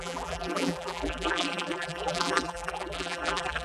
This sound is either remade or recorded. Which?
remade